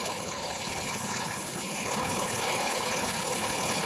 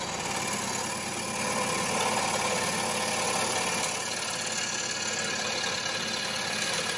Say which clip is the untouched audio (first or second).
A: second